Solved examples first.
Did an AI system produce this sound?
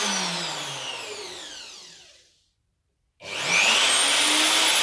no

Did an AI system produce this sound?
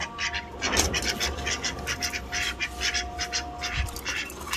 no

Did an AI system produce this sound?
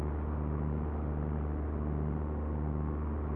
no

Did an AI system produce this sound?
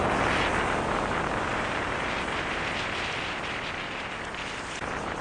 no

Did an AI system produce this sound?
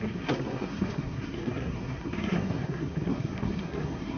yes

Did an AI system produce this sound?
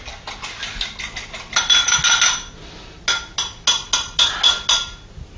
no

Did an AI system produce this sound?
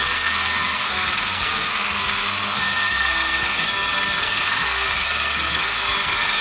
yes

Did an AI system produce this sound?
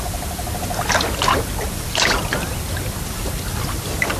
no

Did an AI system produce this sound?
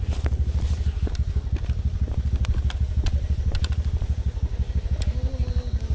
no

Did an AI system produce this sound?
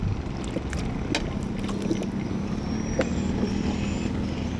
no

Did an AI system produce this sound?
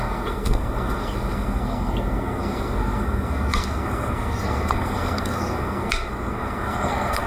yes